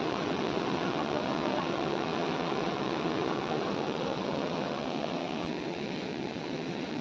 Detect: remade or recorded remade